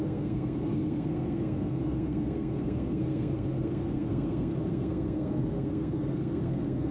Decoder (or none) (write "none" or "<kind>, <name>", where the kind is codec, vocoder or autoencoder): codec, SNAC